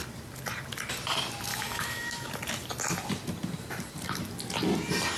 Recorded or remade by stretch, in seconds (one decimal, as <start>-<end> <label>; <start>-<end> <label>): 0.0-1.5 recorded; 1.5-2.3 remade; 2.3-5.2 recorded